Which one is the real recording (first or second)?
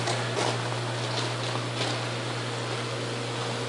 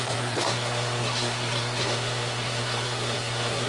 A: first